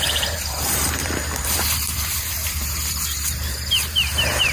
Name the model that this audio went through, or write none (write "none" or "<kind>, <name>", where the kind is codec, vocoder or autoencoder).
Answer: vocoder, BigVGAN v2